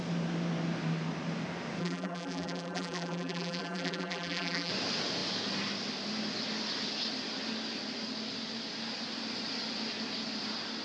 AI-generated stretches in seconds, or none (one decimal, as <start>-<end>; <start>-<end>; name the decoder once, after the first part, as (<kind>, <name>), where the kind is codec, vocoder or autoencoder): 1.8-4.7 (vocoder, BigVGAN v2)